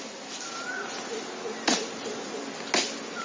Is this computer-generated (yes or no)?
no